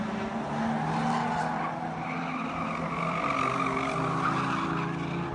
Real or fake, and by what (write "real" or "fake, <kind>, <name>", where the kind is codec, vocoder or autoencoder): real